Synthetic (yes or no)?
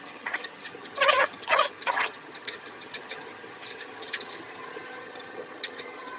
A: yes